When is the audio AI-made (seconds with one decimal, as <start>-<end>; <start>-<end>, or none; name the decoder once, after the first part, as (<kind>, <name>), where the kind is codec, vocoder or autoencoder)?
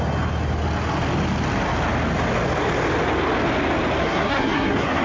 4.0-5.0 (codec, SNAC)